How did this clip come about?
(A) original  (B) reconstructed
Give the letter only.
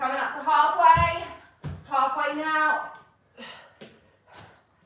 A